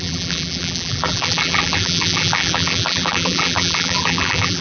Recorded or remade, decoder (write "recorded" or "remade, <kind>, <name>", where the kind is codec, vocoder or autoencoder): remade, vocoder, BigVGAN v2